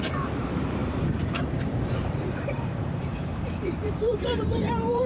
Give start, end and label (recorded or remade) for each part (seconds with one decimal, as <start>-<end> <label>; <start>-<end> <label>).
0.0-5.1 remade